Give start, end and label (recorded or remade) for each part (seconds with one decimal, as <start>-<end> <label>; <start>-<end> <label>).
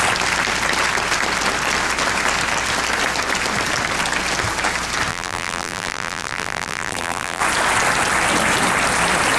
0.0-5.1 recorded; 5.1-7.4 remade; 7.4-9.4 recorded